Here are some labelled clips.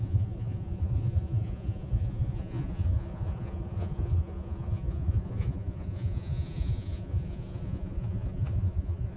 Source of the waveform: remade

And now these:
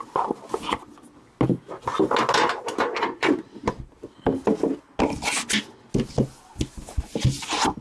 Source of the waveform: recorded